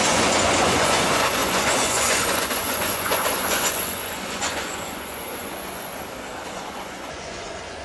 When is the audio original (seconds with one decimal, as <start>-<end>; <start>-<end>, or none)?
5.9-6.5